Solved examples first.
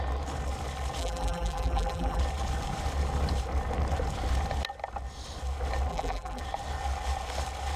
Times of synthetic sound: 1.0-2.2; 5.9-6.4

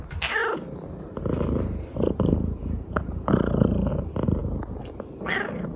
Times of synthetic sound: 0.0-4.4

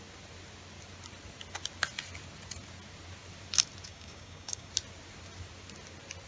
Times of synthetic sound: 3.9-4.7